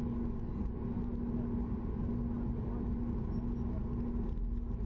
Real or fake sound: real